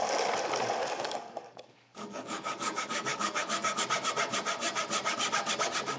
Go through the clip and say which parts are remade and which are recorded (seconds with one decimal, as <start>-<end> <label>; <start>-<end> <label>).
0.0-0.8 recorded; 0.8-3.8 remade; 3.8-6.0 recorded